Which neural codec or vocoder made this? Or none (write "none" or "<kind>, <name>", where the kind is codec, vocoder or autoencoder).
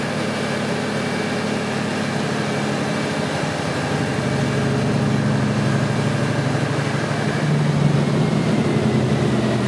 none